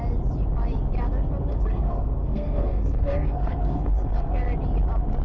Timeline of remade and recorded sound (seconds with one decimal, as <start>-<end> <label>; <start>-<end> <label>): 0.0-1.5 recorded; 1.5-4.3 remade; 4.3-5.2 recorded